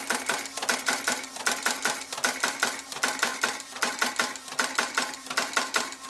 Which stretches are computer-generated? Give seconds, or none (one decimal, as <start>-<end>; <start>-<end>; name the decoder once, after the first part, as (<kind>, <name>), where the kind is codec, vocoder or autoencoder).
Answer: none